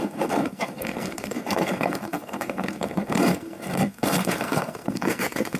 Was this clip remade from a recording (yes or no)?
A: yes